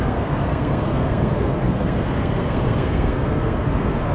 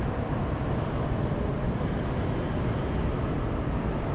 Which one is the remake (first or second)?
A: first